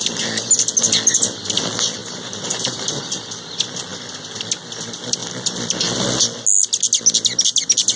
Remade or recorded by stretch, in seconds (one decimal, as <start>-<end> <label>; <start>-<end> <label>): 0.0-2.0 recorded; 2.0-3.0 remade; 3.0-8.0 recorded